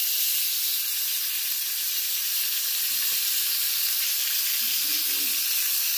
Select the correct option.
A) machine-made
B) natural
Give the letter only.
B